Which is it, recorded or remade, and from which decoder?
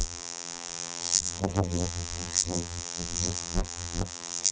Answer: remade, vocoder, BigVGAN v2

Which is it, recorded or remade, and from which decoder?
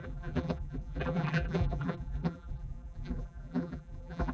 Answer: remade, vocoder, BigVGAN v2